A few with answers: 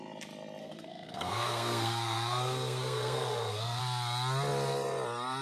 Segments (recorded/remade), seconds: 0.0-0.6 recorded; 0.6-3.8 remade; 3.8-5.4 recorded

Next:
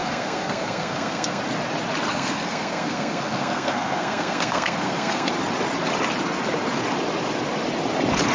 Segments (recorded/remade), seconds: 0.0-1.4 remade; 1.4-2.1 recorded; 2.1-5.3 remade; 5.3-8.3 recorded